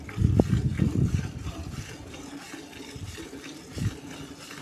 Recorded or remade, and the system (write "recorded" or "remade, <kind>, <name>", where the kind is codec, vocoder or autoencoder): recorded